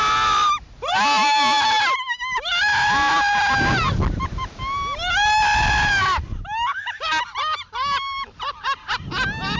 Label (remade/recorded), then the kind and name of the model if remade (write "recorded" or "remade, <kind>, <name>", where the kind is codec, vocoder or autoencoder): recorded